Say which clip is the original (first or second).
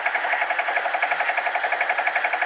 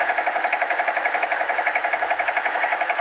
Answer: first